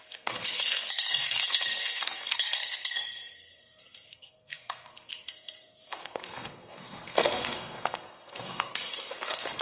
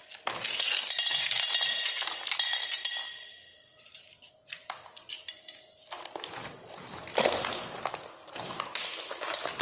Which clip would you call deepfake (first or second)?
first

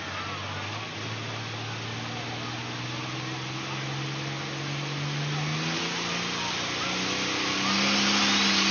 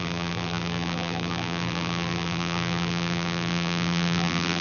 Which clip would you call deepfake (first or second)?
second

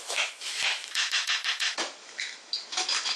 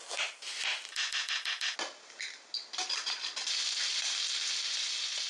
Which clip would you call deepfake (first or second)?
first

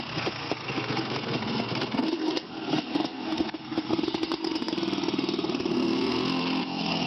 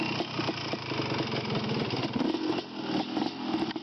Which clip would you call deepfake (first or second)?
first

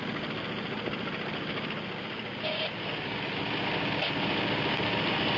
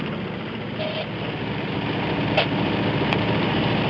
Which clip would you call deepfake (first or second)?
second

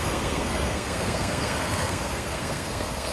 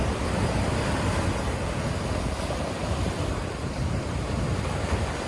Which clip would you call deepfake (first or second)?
first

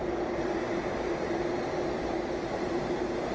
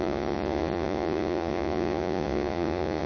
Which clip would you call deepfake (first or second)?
second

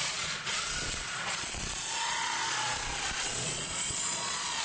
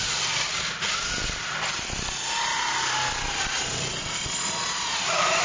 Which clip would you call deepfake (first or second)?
first